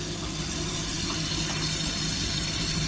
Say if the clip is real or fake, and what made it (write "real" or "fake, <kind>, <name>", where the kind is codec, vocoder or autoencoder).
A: real